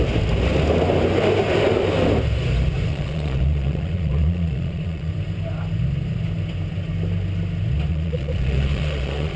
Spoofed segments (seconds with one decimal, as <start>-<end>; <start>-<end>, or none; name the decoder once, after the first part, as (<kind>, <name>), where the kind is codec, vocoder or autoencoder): 2.9-5.1 (vocoder, Vocos); 7.9-9.4

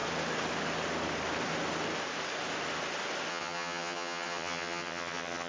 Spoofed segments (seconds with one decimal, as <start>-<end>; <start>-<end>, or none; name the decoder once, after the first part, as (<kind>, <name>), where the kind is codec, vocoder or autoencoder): 3.3-5.5 (vocoder, HiFi-GAN)